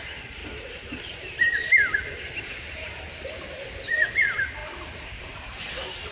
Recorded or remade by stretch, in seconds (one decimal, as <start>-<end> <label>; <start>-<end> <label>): 0.0-0.4 remade; 0.4-4.1 recorded; 4.1-4.6 remade; 4.6-5.2 recorded; 5.2-6.1 remade